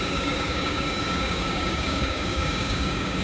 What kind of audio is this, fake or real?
fake